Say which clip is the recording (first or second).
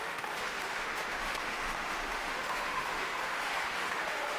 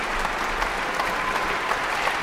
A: second